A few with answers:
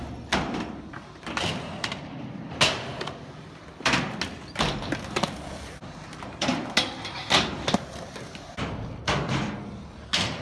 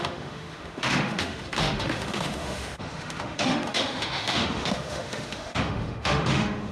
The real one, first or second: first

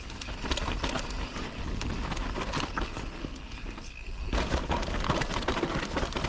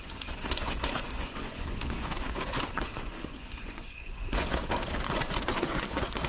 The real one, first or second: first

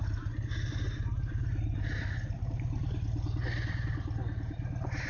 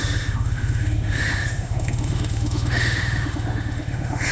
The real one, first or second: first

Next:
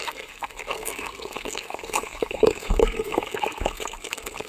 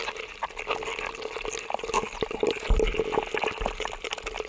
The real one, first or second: second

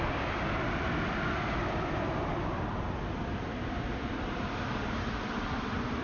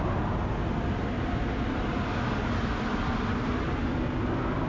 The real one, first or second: second